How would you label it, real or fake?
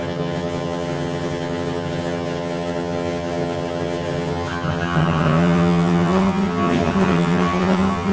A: fake